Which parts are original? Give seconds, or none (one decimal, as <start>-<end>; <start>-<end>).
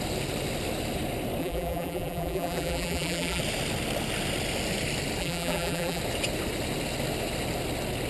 0.0-1.4; 3.4-5.2; 6.0-8.1